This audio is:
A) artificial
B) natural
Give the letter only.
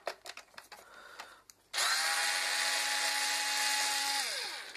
B